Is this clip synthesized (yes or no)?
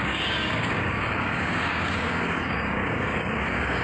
yes